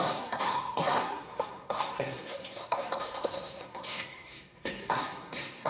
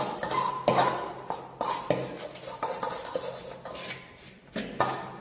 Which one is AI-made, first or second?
first